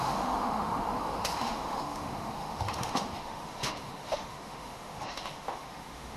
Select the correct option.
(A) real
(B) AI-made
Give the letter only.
B